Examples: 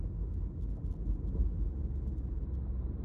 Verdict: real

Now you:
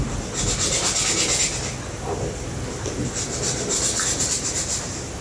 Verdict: real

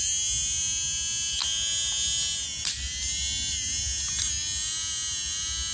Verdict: real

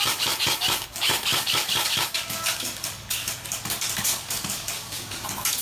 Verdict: fake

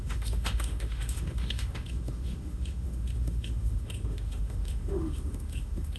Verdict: fake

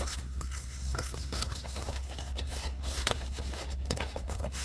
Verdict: fake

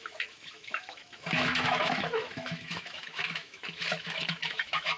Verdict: fake